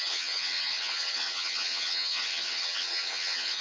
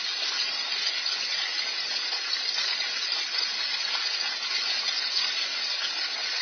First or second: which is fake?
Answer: first